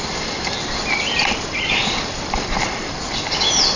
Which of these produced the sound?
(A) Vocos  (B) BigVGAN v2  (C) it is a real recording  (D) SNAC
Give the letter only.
B